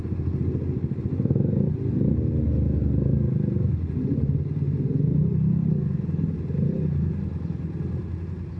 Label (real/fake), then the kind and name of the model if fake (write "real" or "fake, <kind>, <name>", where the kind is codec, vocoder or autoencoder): real